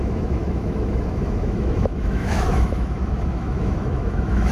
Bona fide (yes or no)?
no